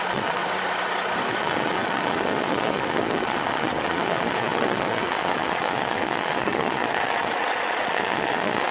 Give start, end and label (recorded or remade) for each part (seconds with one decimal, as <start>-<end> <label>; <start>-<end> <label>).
0.0-0.4 remade; 0.4-1.3 recorded; 1.3-8.7 remade